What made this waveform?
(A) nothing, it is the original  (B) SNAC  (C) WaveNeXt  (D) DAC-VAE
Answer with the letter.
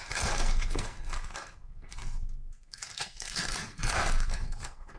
B